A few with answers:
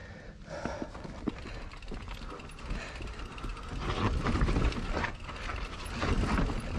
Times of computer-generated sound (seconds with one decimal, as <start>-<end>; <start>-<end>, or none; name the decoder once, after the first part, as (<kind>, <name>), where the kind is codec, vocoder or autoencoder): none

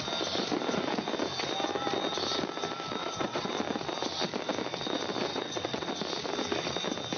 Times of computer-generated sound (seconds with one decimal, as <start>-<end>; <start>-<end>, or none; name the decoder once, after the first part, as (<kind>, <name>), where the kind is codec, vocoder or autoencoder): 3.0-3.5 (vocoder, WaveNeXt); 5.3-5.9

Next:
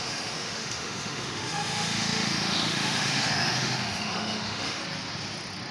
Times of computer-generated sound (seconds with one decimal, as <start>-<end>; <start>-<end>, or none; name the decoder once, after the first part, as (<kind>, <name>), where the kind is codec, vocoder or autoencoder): 0.0-4.8 (autoencoder, DAC-VAE)

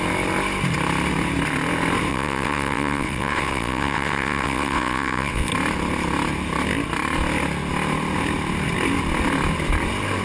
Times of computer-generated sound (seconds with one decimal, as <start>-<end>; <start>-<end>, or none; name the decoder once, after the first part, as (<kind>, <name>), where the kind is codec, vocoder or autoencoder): 2.1-5.5 (vocoder, WaveNeXt)